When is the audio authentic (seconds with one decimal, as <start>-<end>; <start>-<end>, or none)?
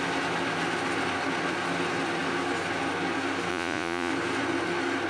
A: 0.0-3.5; 4.1-5.1